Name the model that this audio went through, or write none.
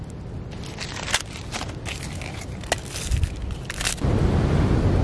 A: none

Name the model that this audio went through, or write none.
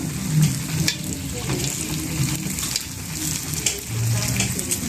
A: none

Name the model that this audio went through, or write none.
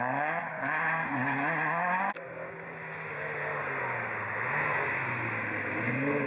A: none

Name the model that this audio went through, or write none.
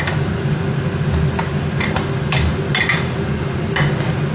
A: none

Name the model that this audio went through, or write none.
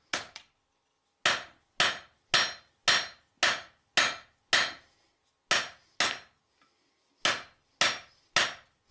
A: none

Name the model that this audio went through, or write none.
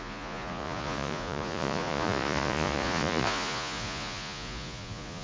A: vocoder, Vocos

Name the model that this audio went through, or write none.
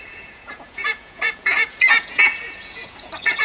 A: vocoder, Vocos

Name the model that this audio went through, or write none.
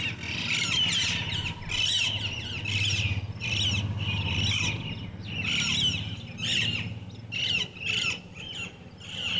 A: none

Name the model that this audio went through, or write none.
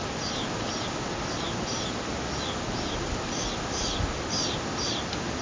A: none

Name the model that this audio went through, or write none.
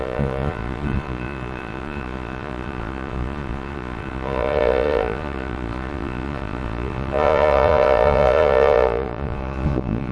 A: vocoder, Vocos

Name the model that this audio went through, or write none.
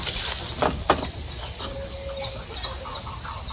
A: none